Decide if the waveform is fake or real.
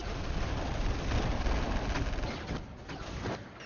real